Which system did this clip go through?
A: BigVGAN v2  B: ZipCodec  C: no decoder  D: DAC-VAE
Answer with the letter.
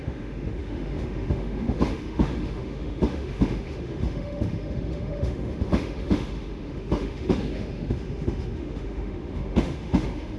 D